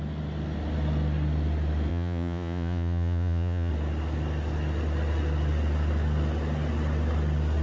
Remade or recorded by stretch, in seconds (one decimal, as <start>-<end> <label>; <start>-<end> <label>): 0.0-1.9 recorded; 1.9-3.7 remade; 3.7-7.6 recorded